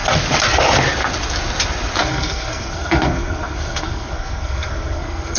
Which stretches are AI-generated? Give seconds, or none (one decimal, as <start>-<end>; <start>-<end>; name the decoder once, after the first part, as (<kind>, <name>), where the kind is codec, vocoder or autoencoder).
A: 2.0-5.4 (codec, SNAC)